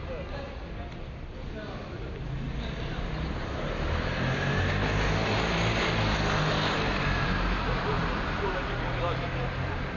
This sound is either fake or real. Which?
real